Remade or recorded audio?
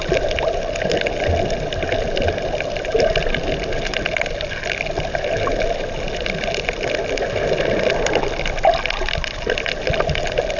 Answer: recorded